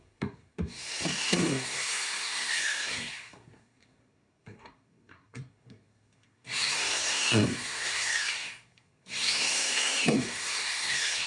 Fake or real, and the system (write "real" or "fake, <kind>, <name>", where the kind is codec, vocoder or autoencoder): fake, codec, SNAC